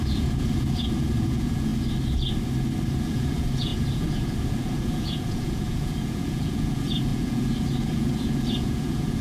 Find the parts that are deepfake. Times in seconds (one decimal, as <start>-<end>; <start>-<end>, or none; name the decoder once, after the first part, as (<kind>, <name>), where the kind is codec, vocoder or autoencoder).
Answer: 0.0-1.7 (vocoder, Vocos); 3.0-9.2